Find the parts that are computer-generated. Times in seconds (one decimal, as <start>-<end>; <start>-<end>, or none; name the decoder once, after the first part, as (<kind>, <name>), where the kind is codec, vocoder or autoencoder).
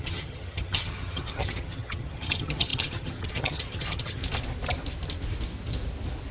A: 0.0-4.2 (vocoder, HiFi-GAN)